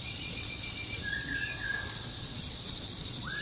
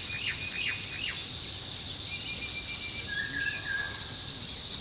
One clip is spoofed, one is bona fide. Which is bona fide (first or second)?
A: second